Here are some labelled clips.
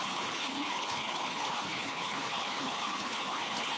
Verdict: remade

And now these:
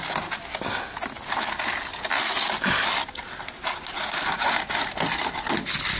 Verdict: recorded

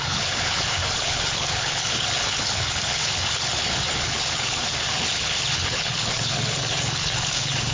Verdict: remade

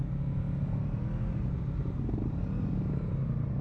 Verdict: recorded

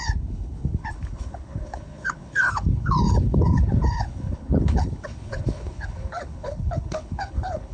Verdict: remade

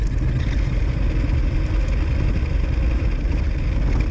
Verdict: recorded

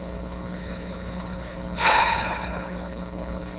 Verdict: remade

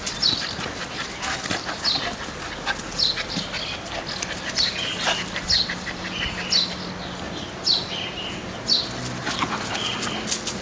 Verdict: recorded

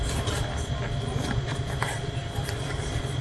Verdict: recorded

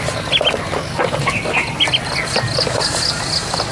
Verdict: recorded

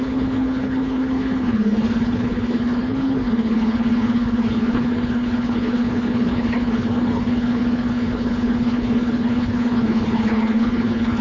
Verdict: remade